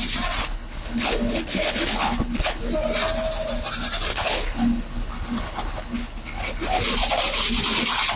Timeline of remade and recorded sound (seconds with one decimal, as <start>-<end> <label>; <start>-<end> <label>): 0.0-0.4 recorded; 0.4-2.6 remade; 2.6-4.1 recorded; 4.1-6.8 remade; 6.8-8.2 recorded